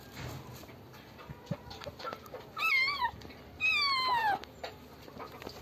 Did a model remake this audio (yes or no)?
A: no